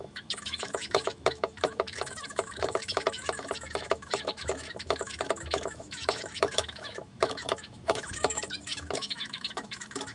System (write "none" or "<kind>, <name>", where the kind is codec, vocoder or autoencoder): autoencoder, DAC-VAE